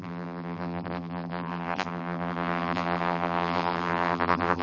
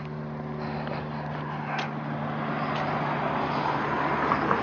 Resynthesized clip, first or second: first